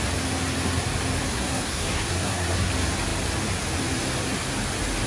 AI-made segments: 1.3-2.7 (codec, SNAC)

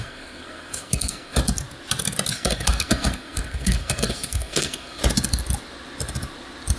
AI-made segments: 0.0-1.4 (codec, SNAC); 2.3-5.0

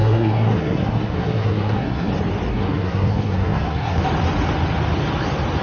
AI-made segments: 0.0-2.1 (codec, SNAC); 2.5-4.0

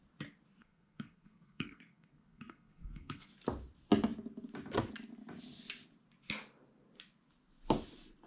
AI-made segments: 0.6-3.3 (codec, SNAC)

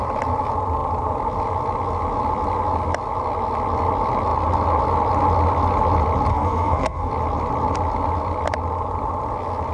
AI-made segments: 6.3-7.1 (codec, SNAC)

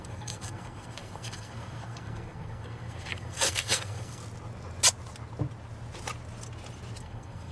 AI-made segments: 0.0-4.2 (codec, SNAC); 7.0-7.5

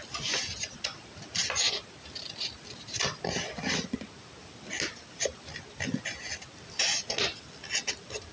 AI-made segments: none

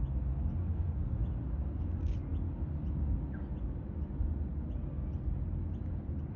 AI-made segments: 0.6-1.2 (codec, SNAC)